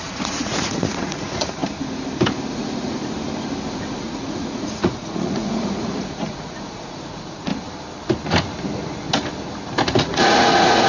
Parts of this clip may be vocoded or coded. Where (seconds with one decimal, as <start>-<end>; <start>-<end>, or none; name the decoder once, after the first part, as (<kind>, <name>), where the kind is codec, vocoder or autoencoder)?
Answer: 0.0-1.6 (vocoder, Vocos); 2.5-3.0; 3.7-7.5; 10.0-10.9